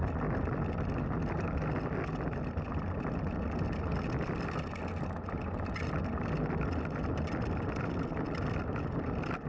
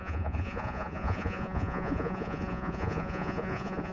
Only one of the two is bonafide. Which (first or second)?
first